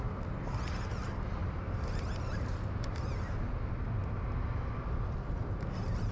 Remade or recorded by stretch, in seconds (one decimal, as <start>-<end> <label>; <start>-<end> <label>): 0.0-6.1 recorded